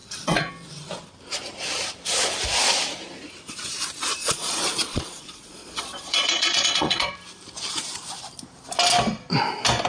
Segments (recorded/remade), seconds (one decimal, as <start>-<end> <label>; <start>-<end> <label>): 0.0-0.5 remade; 0.5-4.2 recorded; 4.2-7.1 remade; 7.1-9.9 recorded

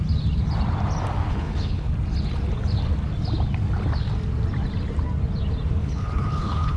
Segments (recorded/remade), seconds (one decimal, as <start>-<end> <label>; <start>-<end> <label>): 0.0-1.3 recorded; 1.3-1.9 remade; 1.9-5.8 recorded; 5.8-6.8 remade

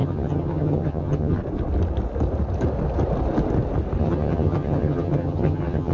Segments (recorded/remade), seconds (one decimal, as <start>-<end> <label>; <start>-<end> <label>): 0.0-1.4 remade; 1.4-4.0 recorded; 4.0-5.9 remade

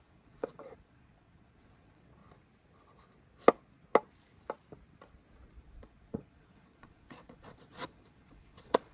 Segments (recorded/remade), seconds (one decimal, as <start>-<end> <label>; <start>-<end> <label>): 0.0-2.2 remade; 2.2-5.6 recorded; 5.6-8.9 remade

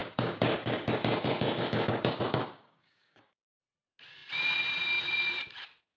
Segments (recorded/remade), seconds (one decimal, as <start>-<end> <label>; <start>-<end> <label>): 0.0-3.6 remade; 3.6-6.0 recorded

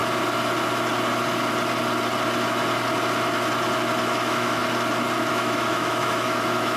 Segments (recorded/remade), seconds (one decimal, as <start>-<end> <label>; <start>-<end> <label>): 0.0-4.0 recorded; 4.0-4.6 remade; 4.6-5.3 recorded; 5.3-6.8 remade

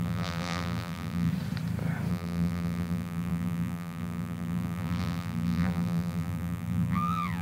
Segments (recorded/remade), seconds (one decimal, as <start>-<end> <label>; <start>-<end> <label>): 0.0-1.3 remade; 1.3-2.1 recorded; 2.1-7.4 remade

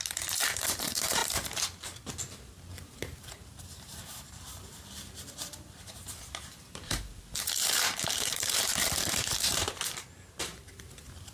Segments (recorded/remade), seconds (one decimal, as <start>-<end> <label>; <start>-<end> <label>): 0.0-1.2 remade; 1.2-2.7 recorded; 2.7-11.3 remade